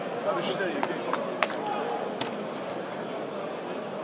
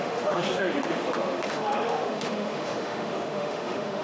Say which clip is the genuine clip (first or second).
first